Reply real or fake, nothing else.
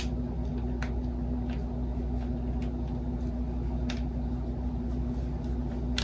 real